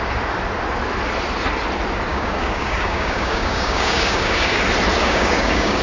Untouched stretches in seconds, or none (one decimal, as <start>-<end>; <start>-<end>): 0.0-2.1; 4.6-5.0